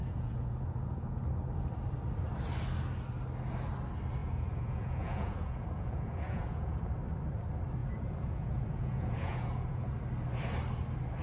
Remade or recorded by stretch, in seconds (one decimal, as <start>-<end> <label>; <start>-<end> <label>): 0.0-1.2 remade; 1.2-4.2 recorded; 4.2-6.9 remade; 6.9-7.8 recorded; 7.8-9.9 remade; 9.9-11.2 recorded